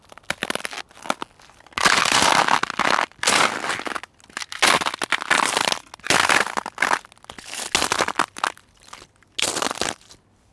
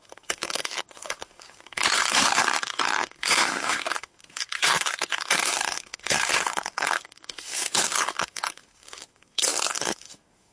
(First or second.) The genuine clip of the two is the first